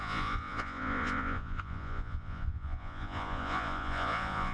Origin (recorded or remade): remade